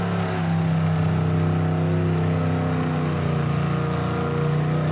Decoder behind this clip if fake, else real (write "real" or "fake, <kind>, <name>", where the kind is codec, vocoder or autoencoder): real